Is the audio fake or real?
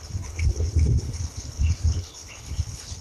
fake